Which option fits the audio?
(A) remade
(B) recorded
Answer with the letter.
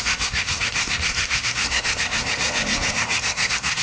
A